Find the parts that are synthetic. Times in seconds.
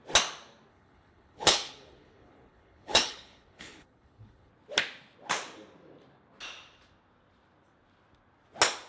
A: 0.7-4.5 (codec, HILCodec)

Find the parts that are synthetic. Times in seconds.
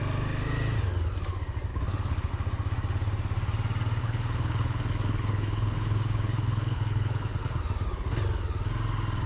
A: 1.7-2.3 (codec, HILCodec); 4.0-7.6